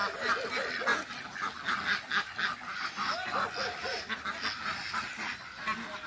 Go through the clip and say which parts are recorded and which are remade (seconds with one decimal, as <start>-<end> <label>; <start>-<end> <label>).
0.0-6.1 recorded